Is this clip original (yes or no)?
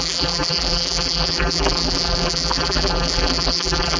no